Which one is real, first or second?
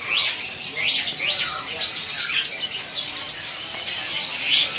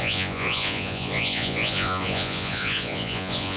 first